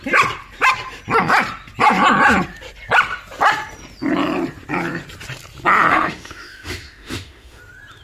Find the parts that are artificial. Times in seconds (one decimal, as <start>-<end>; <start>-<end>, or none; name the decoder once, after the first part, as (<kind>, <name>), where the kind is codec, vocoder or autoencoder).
5.9-7.6 (autoencoder, DAC-VAE)